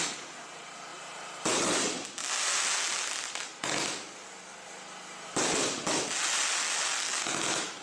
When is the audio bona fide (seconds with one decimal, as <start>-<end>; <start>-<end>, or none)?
0.0-7.8